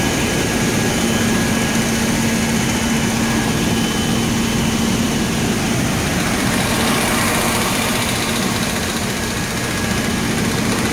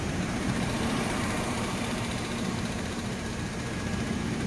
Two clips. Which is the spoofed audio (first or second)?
second